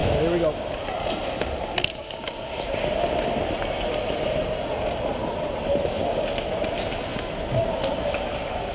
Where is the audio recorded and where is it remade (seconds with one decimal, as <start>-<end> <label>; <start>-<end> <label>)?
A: 0.0-8.7 recorded